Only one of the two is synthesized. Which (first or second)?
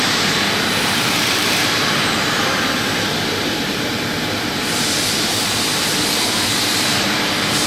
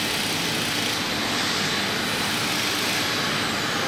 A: first